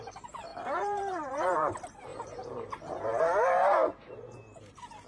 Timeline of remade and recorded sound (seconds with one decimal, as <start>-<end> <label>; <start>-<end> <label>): 0.0-3.6 remade; 3.6-5.1 recorded

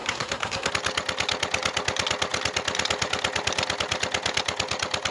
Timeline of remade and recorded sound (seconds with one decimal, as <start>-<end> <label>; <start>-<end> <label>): 0.0-0.7 remade; 0.7-5.1 recorded

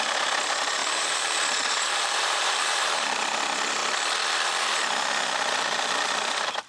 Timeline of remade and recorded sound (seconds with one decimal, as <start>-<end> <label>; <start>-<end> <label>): 0.0-0.8 recorded; 0.8-3.2 remade; 3.2-6.7 recorded

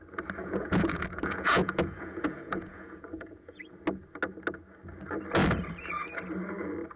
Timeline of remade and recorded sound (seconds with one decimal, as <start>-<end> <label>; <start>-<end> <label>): 0.0-0.4 recorded; 0.4-3.7 remade; 3.7-7.0 recorded

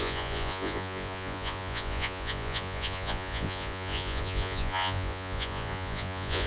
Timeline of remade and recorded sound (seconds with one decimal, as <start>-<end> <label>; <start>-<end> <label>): 0.0-6.5 remade

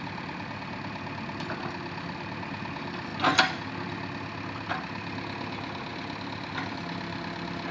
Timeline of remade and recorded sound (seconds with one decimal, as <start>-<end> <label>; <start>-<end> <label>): 0.0-7.7 recorded

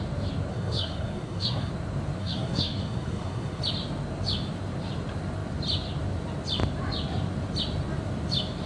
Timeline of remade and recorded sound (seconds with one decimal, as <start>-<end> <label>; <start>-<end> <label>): 0.0-0.5 recorded; 0.5-1.7 remade; 1.7-2.2 recorded; 2.2-3.6 remade; 3.6-8.7 recorded